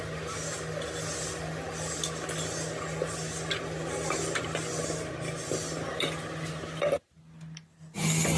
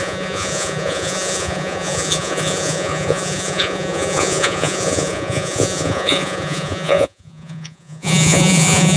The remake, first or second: second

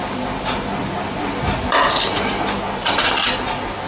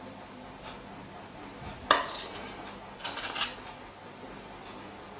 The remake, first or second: first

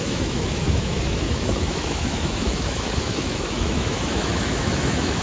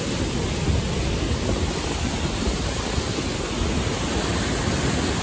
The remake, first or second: first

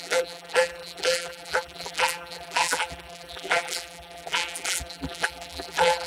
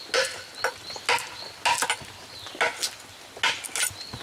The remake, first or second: first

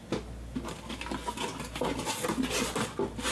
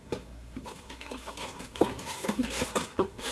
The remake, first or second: second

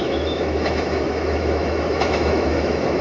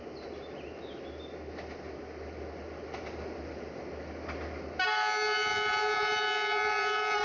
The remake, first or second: first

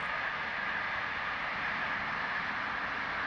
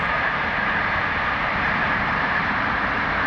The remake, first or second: second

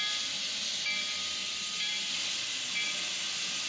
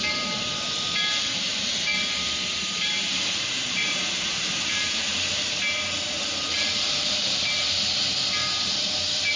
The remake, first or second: second